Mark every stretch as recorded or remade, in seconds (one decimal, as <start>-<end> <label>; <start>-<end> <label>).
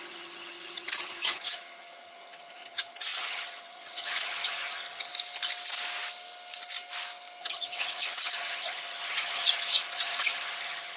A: 0.0-5.1 remade; 5.1-7.4 recorded; 7.4-11.0 remade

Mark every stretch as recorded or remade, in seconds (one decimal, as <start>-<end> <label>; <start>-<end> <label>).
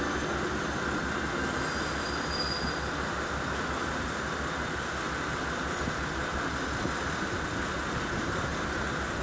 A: 0.0-9.2 recorded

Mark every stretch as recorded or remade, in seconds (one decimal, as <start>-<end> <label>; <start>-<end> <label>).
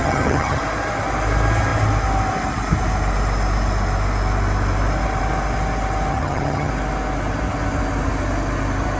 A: 0.0-0.6 remade; 0.6-6.1 recorded; 6.1-6.7 remade; 6.7-9.0 recorded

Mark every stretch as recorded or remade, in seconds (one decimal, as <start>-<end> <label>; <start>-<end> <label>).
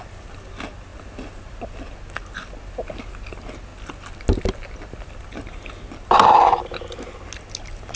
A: 0.0-8.0 recorded